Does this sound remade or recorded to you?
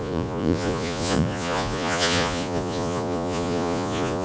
remade